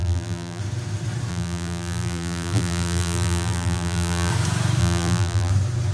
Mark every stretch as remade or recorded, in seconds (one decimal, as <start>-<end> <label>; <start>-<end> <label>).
0.0-0.6 remade; 0.6-1.3 recorded; 1.3-4.3 remade; 4.3-4.8 recorded; 4.8-5.5 remade; 5.5-5.9 recorded